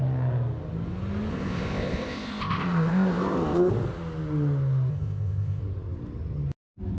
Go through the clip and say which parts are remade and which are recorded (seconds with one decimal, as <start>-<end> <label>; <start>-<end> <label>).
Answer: 0.0-1.3 recorded; 1.3-3.7 remade; 3.7-4.9 recorded; 4.9-5.6 remade; 5.6-7.0 recorded